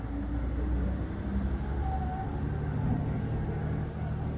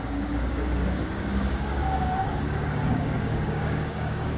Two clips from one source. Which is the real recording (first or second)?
first